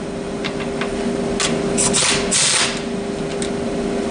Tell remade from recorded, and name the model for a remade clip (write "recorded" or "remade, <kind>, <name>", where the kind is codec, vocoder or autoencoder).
recorded